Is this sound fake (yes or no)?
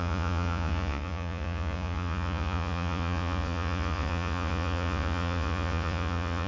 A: yes